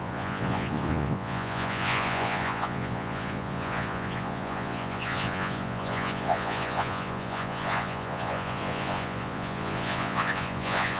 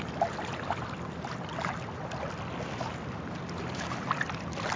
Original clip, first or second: second